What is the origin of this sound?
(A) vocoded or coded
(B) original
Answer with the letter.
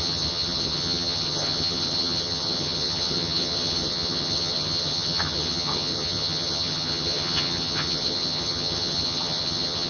A